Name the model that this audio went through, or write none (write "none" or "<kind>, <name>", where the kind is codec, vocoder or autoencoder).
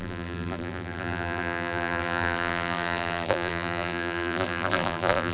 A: vocoder, BigVGAN v2